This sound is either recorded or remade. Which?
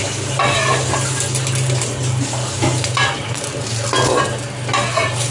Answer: recorded